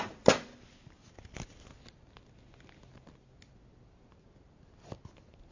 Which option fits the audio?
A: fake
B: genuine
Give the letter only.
B